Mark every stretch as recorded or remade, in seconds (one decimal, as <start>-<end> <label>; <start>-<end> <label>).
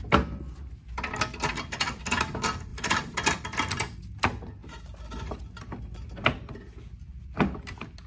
0.0-2.7 recorded; 2.7-3.8 remade; 3.8-8.1 recorded